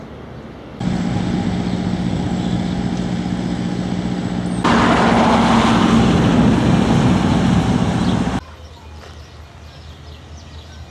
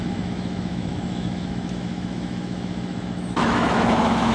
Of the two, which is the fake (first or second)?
second